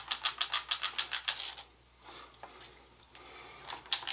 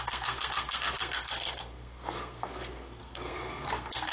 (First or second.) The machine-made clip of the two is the second